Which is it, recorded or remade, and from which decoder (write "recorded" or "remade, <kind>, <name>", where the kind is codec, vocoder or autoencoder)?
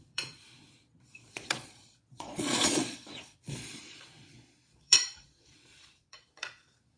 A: remade, vocoder, Vocos